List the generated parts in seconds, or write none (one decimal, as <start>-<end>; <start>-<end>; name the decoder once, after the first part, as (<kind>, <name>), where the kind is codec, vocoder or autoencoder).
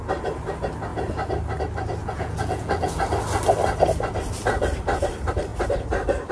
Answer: 2.0-2.9 (vocoder, Vocos)